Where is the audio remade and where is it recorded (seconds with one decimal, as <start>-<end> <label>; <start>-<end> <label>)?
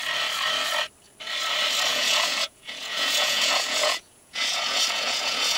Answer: 0.0-1.9 recorded; 1.9-5.6 remade